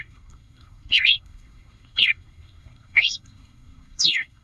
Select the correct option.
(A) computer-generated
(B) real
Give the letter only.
A